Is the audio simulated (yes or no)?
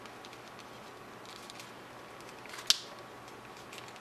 no